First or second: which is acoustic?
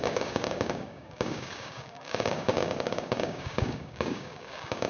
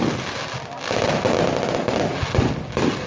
second